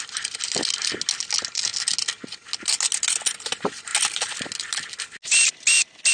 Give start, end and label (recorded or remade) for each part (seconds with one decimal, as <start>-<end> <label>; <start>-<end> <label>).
0.0-6.1 recorded